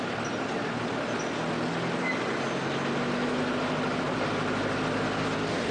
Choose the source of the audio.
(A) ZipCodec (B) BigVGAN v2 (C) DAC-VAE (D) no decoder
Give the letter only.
D